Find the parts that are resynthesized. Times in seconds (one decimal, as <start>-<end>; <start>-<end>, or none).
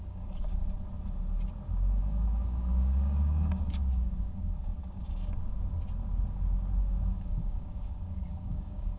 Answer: 0.0-0.6; 2.0-4.7; 6.8-9.0